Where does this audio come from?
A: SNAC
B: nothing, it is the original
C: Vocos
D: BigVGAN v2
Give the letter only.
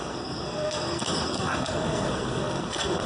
A